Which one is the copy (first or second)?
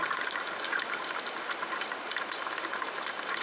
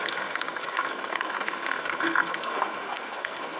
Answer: second